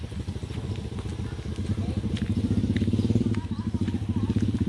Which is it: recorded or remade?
recorded